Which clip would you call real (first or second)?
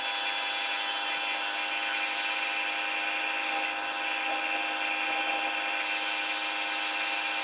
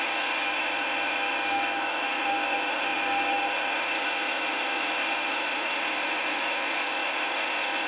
first